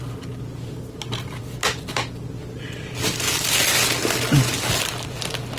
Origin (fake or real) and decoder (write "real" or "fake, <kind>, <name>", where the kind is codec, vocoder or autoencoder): real